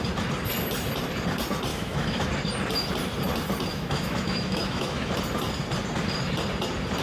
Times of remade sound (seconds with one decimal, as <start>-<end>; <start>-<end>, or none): 1.7-2.3; 3.7-5.1